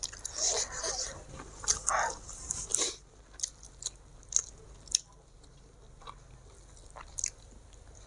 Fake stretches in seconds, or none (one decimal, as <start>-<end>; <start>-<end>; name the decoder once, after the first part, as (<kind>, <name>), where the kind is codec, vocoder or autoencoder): none